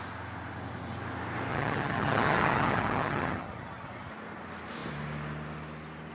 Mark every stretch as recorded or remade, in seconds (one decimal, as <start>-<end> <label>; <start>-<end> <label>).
0.0-1.5 recorded; 1.5-4.1 remade; 4.1-6.1 recorded